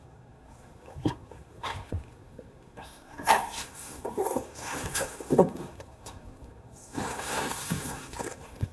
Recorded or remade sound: remade